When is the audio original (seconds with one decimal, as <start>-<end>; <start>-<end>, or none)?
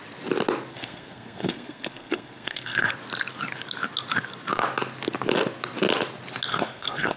0.0-0.7; 2.9-6.5